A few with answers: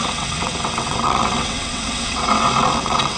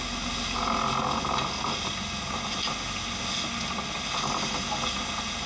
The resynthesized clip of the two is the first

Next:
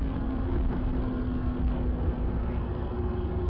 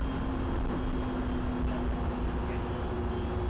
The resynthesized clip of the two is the first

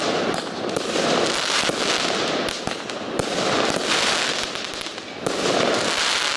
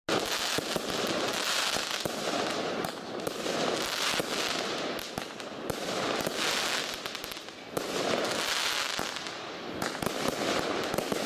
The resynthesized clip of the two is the first